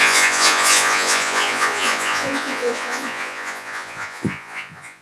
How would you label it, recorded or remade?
remade